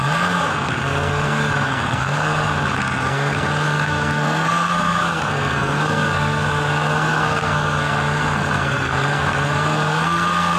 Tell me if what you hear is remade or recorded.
remade